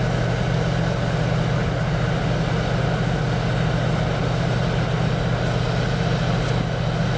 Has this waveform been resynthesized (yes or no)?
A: no